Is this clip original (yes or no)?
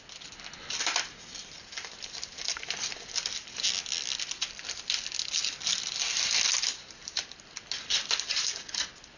yes